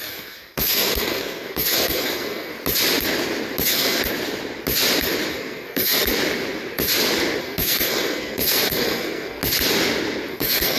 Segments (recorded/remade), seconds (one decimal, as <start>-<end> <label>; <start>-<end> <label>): 0.0-2.5 remade; 2.5-3.6 recorded; 3.6-4.0 remade; 4.0-5.3 recorded; 5.3-6.1 remade; 6.1-7.4 recorded; 7.4-9.4 remade; 9.4-10.3 recorded; 10.3-10.8 remade